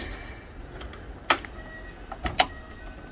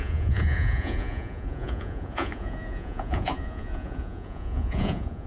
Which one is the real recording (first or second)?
first